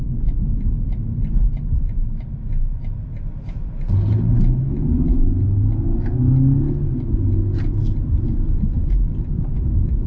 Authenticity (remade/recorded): recorded